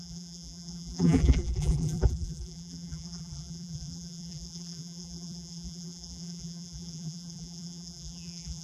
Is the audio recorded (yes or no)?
no